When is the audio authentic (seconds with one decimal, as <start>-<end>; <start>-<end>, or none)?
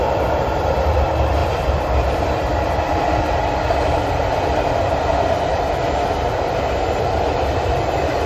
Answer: none